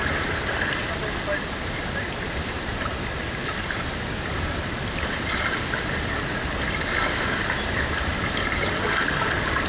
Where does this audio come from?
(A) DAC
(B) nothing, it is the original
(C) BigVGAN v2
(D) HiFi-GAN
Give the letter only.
B